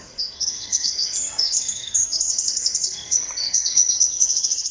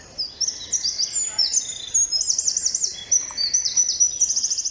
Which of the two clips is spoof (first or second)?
first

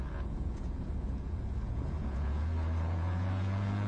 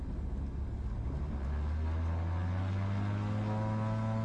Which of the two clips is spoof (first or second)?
first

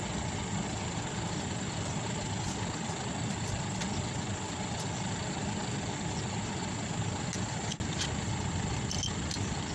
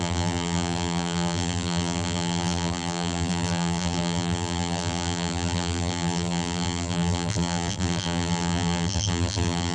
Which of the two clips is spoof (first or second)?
second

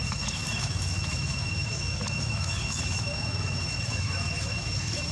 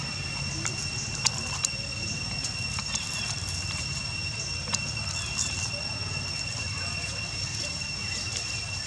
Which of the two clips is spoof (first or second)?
first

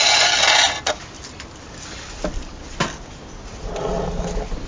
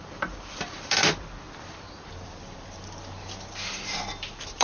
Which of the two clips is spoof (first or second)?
second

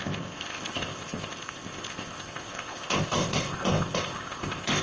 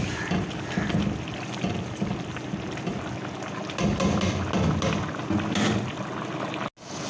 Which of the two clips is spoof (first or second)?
first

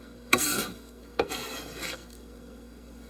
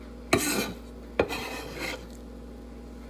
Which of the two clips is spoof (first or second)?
first